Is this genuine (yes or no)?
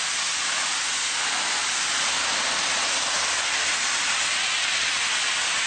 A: yes